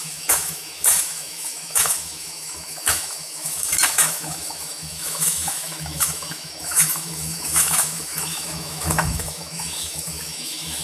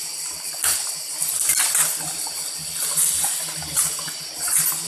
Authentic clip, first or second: second